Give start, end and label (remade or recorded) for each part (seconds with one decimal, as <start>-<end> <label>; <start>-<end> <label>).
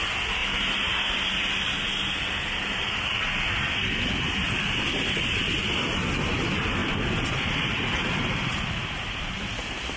0.0-0.4 recorded; 0.4-3.2 remade; 3.2-6.8 recorded; 6.8-10.0 remade